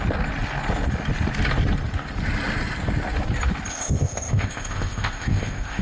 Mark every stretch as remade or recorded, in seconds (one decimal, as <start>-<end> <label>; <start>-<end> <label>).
0.0-3.7 recorded; 3.7-5.8 remade

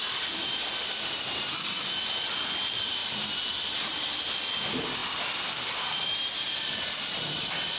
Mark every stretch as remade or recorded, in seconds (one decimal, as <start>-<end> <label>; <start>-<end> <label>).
0.0-7.8 recorded